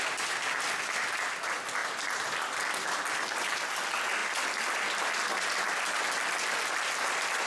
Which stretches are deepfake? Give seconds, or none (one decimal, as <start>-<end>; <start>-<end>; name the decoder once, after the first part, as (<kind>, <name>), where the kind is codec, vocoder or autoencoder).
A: 1.8-3.7 (vocoder, BigVGAN v2); 4.2-5.1